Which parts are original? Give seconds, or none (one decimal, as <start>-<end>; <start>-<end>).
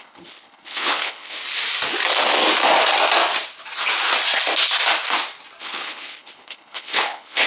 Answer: 1.4-5.6